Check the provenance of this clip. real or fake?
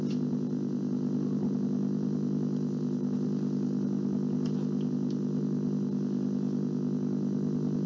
real